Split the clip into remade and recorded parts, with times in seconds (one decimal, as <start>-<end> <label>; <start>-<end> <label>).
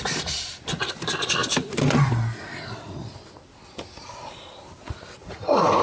0.0-5.2 recorded; 5.2-5.8 remade